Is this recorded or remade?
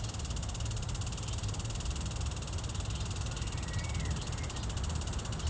recorded